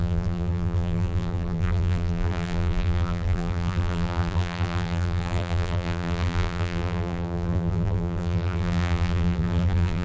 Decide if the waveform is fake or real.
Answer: fake